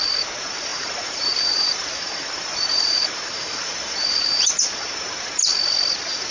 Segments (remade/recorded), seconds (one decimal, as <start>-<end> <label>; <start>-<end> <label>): 0.0-0.7 recorded; 0.7-4.5 remade; 4.5-6.3 recorded